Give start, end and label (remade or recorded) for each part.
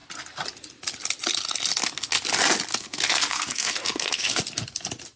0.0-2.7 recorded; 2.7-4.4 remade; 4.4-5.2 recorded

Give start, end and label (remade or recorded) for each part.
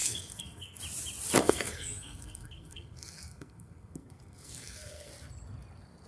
0.0-0.8 remade; 0.8-1.4 recorded; 1.4-5.1 remade; 5.1-6.1 recorded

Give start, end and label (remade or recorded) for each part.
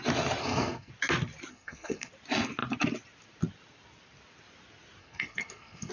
0.0-0.4 recorded; 0.4-0.9 remade; 0.9-1.5 recorded; 1.5-2.1 remade; 2.1-5.0 recorded; 5.0-5.9 remade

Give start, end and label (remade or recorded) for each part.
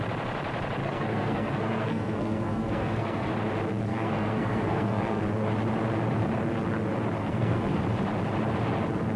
0.0-0.8 recorded; 0.8-3.3 remade; 3.3-3.9 recorded; 3.9-5.2 remade; 5.2-7.2 recorded; 7.2-7.8 remade; 7.8-9.2 recorded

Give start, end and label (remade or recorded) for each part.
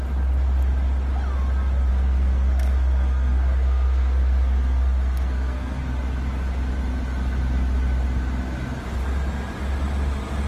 0.0-1.9 recorded; 1.9-5.8 remade; 5.8-10.5 recorded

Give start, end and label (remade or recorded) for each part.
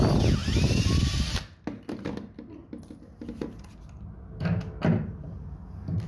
0.0-6.1 recorded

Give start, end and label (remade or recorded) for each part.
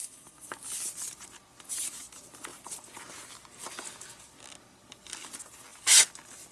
0.0-0.5 remade; 0.5-6.5 recorded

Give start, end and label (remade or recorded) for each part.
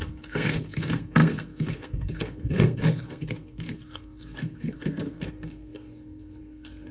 0.0-6.9 remade